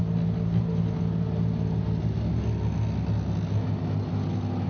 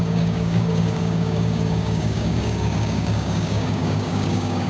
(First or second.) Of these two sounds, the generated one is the second